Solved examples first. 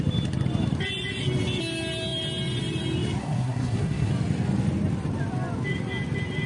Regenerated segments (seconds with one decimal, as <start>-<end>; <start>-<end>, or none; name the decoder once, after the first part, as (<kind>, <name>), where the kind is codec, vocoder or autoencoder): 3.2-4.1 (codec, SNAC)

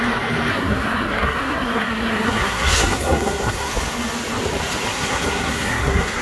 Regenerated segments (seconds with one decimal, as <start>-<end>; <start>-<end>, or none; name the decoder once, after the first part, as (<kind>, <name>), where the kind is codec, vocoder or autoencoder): 0.5-3.7 (codec, SNAC); 4.9-6.2

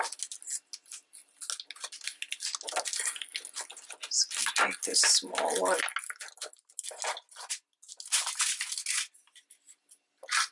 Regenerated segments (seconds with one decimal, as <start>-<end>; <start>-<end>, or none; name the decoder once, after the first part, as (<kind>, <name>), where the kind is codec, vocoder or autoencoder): none

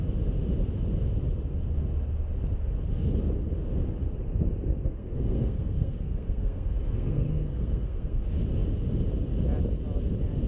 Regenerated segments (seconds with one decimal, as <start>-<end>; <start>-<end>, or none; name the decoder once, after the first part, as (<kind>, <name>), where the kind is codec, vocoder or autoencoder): 4.8-8.2 (codec, SNAC)

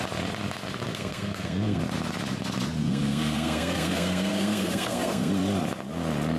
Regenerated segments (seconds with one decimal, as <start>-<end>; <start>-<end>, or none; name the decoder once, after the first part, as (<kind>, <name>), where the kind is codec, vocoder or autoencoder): 0.9-1.8 (codec, SNAC); 2.8-5.3